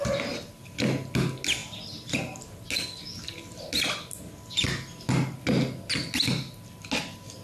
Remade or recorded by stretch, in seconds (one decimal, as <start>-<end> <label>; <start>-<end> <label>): 0.0-7.4 recorded